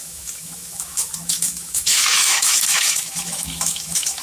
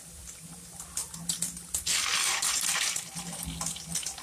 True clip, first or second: second